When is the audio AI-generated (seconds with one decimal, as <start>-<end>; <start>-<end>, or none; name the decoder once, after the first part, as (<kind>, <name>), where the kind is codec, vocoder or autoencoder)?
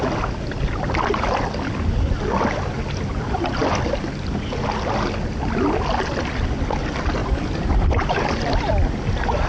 7.2-8.7 (vocoder, BigVGAN v2)